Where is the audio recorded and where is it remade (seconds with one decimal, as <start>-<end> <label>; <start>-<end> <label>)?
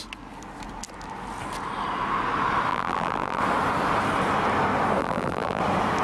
0.0-2.7 recorded; 2.7-3.4 remade; 3.4-5.0 recorded; 5.0-5.6 remade; 5.6-6.0 recorded